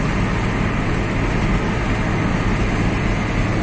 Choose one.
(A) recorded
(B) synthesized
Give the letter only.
A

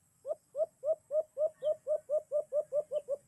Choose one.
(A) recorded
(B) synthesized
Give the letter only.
B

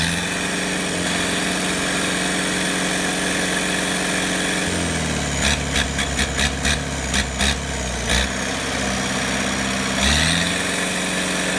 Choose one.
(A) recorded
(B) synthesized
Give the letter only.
A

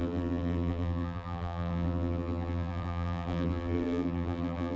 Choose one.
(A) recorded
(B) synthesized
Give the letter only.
B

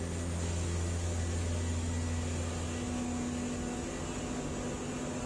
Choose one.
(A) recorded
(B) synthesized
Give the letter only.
A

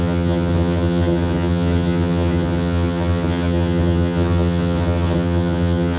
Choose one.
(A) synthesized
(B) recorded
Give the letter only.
A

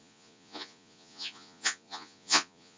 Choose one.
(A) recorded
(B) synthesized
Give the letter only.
B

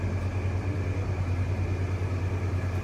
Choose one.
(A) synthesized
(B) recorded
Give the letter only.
B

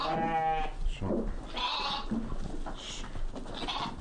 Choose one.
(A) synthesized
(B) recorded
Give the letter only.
B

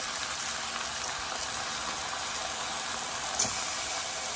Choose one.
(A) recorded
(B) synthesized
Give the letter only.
A